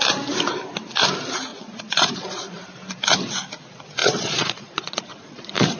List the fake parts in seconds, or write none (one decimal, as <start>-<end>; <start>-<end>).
1.5-2.6; 4.0-5.8